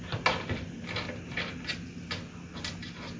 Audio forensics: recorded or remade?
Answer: recorded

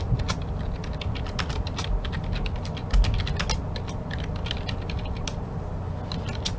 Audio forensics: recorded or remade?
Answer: recorded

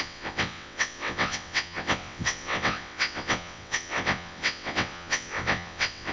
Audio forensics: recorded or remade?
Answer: remade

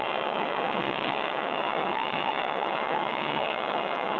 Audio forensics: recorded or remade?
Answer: remade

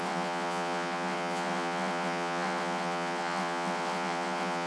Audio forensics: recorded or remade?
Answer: remade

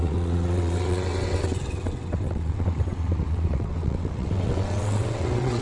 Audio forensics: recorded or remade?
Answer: remade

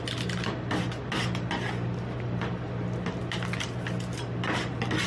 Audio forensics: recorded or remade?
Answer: recorded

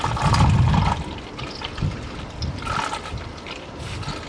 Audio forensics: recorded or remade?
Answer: recorded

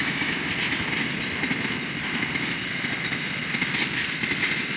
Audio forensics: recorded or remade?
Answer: recorded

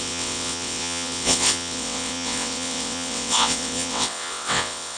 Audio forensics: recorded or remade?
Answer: remade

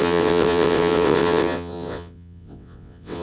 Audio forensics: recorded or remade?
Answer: remade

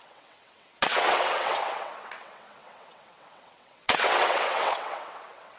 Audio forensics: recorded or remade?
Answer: remade